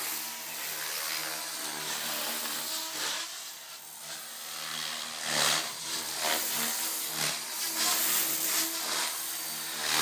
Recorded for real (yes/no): yes